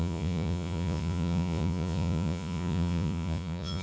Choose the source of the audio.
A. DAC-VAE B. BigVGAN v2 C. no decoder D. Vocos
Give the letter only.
D